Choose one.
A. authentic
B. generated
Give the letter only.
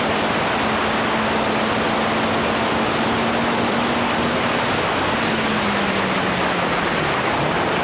A